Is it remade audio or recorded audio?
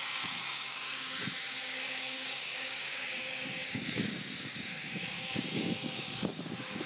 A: remade